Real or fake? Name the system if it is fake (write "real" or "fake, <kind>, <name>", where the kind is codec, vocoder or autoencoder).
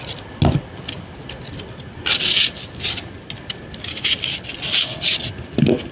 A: real